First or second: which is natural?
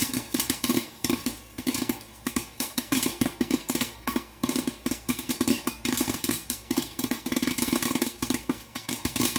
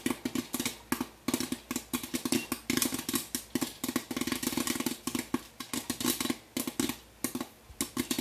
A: second